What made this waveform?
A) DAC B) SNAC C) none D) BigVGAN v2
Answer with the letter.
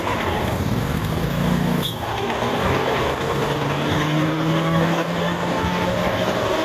A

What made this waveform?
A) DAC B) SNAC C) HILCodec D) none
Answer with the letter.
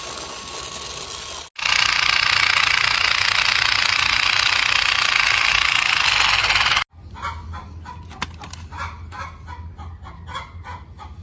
D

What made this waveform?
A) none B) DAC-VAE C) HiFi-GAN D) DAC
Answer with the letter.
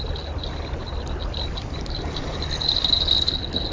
A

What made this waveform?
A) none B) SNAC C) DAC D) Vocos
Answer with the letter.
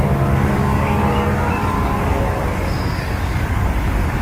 C